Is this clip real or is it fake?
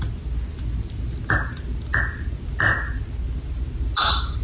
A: real